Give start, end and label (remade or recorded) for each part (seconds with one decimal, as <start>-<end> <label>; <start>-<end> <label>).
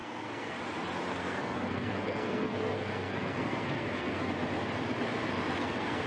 0.0-0.6 remade; 0.6-1.1 recorded; 1.1-4.3 remade; 4.3-5.2 recorded; 5.2-6.1 remade